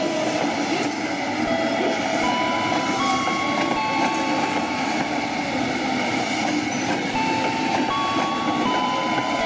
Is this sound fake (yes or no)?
no